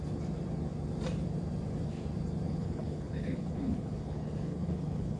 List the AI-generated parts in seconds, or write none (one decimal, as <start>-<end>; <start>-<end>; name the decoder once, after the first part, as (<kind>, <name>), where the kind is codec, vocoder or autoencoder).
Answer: 2.5-5.2 (codec, HILCodec)